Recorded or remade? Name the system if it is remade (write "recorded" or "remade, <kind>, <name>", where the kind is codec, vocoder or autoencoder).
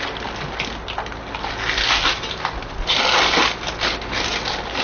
recorded